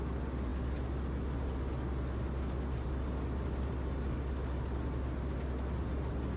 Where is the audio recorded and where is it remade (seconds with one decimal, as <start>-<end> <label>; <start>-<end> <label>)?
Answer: 0.0-6.4 recorded